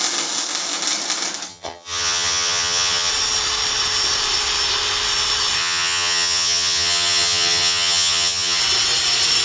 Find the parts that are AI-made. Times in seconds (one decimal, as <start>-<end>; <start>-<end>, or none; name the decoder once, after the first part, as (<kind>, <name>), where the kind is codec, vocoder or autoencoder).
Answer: 1.5-3.1 (vocoder, HiFi-GAN); 5.6-8.6